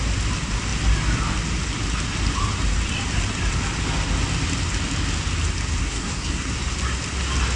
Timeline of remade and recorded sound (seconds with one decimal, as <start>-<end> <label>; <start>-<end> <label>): 0.0-5.8 recorded; 5.8-6.5 remade; 6.5-7.6 recorded